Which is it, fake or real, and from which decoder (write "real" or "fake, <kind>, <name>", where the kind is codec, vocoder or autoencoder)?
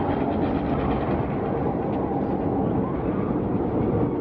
real